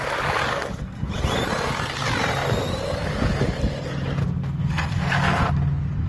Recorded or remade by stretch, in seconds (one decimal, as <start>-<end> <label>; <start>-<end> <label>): 0.0-0.5 recorded; 0.5-1.1 remade; 1.1-4.2 recorded; 4.2-5.5 remade; 5.5-6.1 recorded